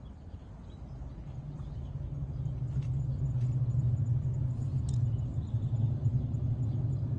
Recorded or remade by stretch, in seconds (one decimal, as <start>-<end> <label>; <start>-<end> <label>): 0.0-7.2 recorded